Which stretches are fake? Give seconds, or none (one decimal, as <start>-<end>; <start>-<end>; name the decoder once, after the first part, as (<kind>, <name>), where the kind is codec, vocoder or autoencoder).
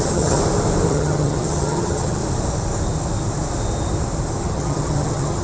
0.0-0.4 (vocoder, HiFi-GAN); 0.9-2.2; 4.4-5.4